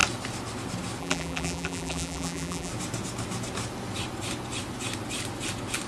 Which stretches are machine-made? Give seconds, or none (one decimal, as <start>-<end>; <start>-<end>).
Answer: 1.0-2.7